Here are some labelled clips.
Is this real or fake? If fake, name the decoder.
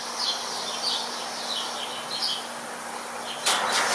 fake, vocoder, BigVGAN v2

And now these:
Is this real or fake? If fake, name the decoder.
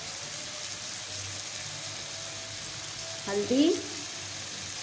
real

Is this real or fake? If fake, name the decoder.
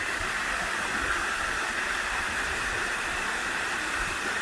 real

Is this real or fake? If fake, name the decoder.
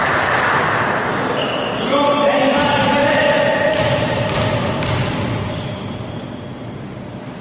fake, vocoder, BigVGAN v2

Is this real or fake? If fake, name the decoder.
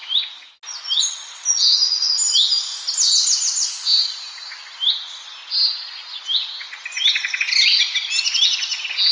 real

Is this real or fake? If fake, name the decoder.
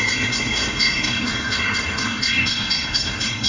fake, codec, SNAC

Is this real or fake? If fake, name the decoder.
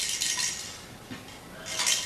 real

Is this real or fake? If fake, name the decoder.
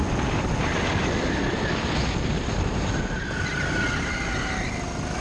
real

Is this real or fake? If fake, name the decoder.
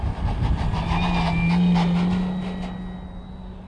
real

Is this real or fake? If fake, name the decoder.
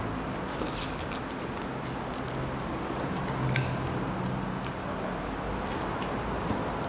real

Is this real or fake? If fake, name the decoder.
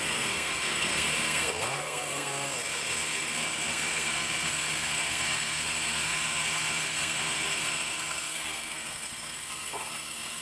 fake, codec, SNAC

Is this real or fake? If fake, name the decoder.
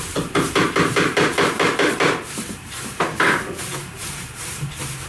fake, vocoder, BigVGAN v2